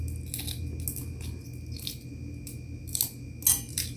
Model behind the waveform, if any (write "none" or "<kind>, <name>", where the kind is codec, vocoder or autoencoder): none